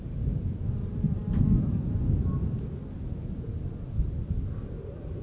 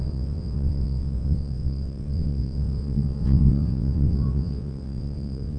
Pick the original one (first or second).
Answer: first